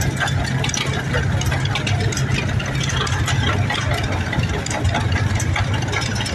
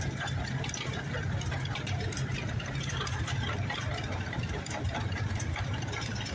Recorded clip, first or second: first